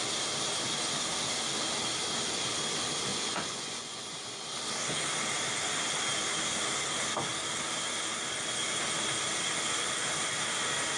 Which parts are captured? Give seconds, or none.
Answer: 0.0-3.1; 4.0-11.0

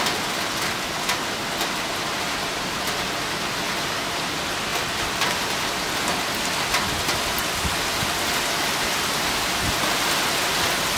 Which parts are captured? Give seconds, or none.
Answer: 0.0-11.0

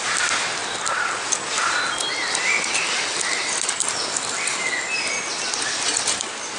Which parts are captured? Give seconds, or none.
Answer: 0.0-6.6

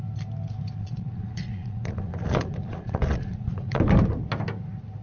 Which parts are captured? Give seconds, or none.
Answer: 0.0-0.8; 3.8-5.0

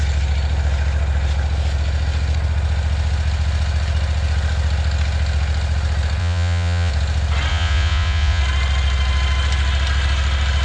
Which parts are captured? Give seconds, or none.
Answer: 0.0-6.2; 6.9-7.5; 8.4-10.6

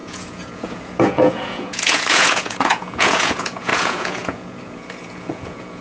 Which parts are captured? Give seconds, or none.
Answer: none